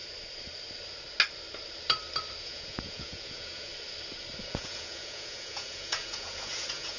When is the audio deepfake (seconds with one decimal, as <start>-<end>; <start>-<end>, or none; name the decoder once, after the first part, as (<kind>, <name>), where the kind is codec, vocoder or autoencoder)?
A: 2.4-3.7 (vocoder, Vocos); 4.4-7.0